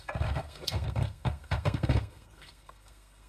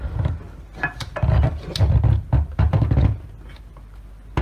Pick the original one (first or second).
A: second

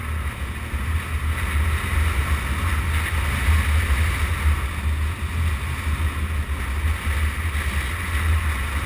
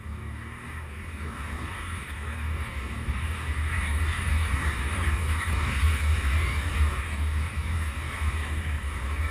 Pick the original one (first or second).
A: first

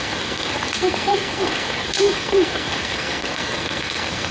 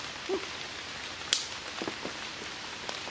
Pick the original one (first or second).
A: second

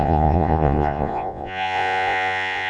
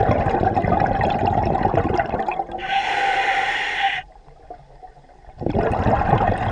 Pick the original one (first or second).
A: second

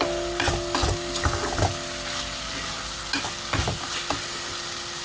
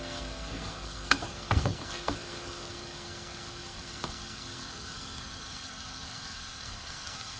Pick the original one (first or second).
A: first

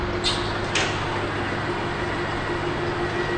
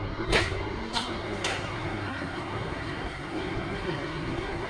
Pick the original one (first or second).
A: first